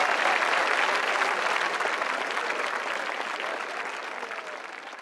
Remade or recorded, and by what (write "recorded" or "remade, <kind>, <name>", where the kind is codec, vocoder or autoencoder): recorded